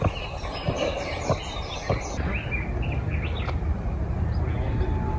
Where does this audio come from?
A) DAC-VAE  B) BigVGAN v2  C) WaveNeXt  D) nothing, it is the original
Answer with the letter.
D